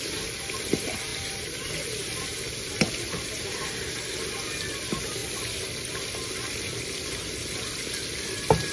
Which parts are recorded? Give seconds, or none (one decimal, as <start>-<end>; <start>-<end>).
0.0-8.7